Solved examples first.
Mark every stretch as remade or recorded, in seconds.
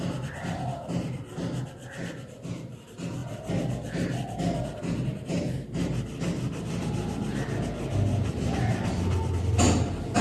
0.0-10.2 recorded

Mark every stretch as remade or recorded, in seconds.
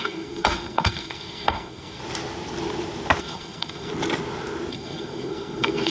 0.0-2.0 remade; 2.0-3.2 recorded; 3.2-3.9 remade; 3.9-4.7 recorded; 4.7-5.9 remade